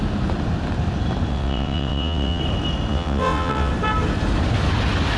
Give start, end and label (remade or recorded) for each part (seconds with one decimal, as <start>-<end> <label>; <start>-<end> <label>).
0.0-1.3 recorded; 1.3-2.4 remade; 2.4-2.9 recorded; 2.9-3.7 remade; 3.7-5.2 recorded